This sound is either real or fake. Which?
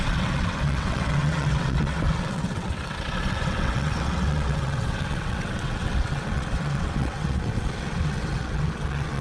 fake